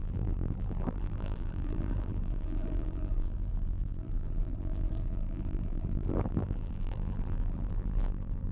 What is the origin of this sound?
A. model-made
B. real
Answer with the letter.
A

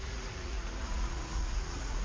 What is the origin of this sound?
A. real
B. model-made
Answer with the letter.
B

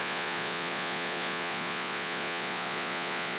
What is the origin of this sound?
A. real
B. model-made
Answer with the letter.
B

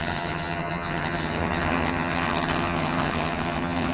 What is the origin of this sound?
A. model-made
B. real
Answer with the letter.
A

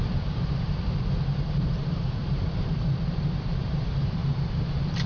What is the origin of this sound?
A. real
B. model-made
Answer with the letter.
B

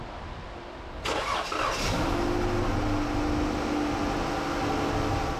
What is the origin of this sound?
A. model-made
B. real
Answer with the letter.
B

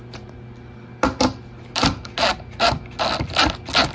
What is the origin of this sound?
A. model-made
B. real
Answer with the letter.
B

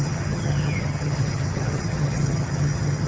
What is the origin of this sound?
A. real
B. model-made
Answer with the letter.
B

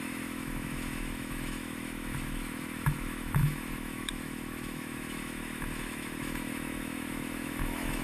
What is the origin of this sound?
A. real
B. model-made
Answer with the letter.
B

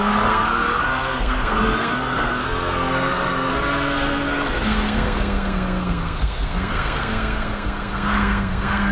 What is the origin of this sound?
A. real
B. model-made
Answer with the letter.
B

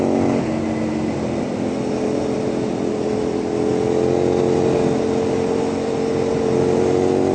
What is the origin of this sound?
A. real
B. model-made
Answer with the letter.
A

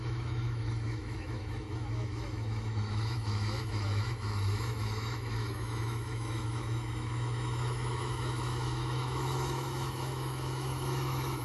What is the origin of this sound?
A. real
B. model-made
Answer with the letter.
B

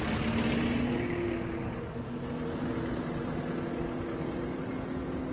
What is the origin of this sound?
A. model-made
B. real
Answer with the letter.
B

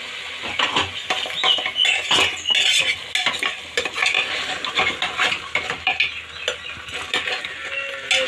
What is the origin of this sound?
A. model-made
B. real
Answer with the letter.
B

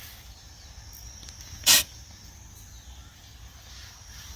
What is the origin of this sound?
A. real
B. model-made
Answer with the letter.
A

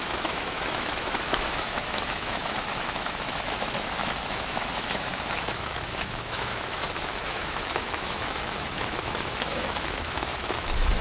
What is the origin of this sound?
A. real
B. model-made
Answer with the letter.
B